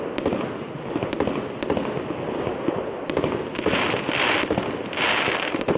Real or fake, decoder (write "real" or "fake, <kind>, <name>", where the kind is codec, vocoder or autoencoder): real